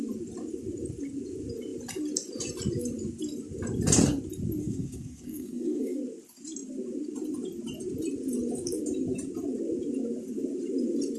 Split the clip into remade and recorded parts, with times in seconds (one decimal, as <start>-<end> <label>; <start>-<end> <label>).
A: 0.0-4.6 recorded; 4.6-6.0 remade; 6.0-11.2 recorded